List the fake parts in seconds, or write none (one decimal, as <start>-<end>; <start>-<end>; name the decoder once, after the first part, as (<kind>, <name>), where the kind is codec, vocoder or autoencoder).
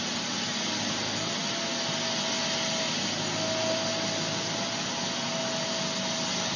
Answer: none